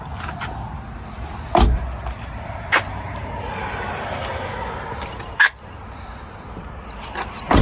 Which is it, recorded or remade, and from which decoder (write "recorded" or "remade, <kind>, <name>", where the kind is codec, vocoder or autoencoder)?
remade, vocoder, BigVGAN v2